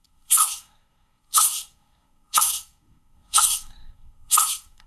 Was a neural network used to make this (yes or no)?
yes